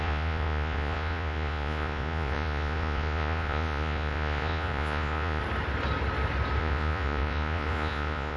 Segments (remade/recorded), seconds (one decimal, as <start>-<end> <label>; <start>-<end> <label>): 0.0-5.4 remade; 5.4-6.6 recorded; 6.6-8.4 remade